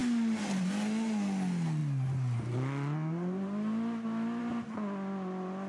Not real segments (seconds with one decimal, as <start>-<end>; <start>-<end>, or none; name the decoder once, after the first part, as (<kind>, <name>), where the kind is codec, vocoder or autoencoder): none